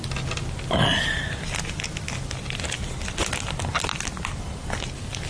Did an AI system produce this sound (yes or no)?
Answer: no